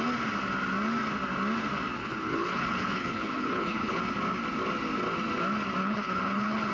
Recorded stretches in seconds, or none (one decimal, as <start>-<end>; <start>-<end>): 0.0-2.0; 4.0-5.8